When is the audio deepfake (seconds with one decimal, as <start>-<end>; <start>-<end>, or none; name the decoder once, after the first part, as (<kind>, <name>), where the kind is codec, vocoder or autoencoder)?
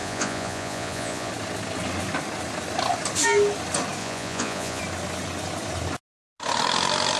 0.0-1.3 (vocoder, Vocos); 4.0-4.8